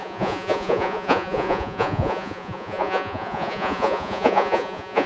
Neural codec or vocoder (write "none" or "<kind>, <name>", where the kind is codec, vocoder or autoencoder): vocoder, Vocos